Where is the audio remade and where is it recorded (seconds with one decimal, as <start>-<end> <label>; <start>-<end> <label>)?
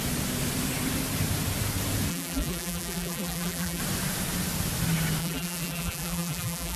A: 0.0-2.1 recorded; 2.1-3.8 remade; 3.8-5.2 recorded; 5.2-6.8 remade